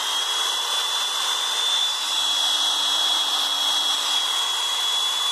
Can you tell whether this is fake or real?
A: fake